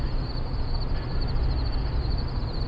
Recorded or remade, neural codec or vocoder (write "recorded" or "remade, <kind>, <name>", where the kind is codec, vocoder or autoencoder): recorded